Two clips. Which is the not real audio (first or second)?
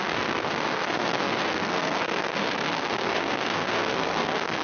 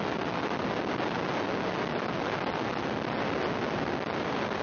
first